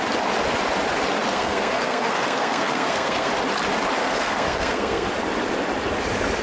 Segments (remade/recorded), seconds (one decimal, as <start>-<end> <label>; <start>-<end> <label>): 0.0-1.3 recorded; 1.3-3.3 remade; 3.3-4.0 recorded; 4.0-5.1 remade; 5.1-6.4 recorded